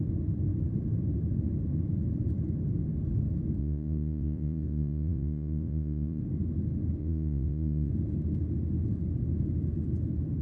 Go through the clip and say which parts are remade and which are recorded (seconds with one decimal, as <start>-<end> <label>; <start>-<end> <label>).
0.0-3.6 recorded; 3.6-6.2 remade; 6.2-7.0 recorded; 7.0-7.9 remade; 7.9-10.4 recorded